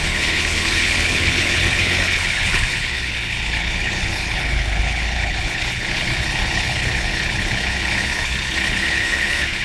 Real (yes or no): no